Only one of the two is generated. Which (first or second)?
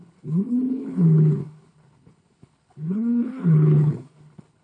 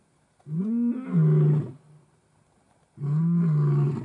first